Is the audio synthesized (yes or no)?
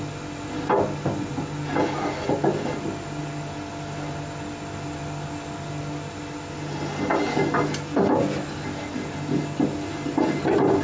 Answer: no